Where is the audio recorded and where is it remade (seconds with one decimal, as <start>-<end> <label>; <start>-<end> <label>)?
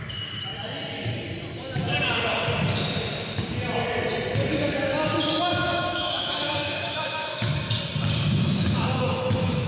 0.0-0.5 remade; 0.5-5.4 recorded; 5.4-7.5 remade; 7.5-8.3 recorded; 8.3-9.7 remade